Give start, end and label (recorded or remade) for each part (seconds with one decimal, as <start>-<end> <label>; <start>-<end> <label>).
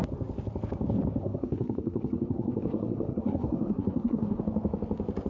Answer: 0.0-1.2 recorded; 1.2-4.4 remade; 4.4-5.3 recorded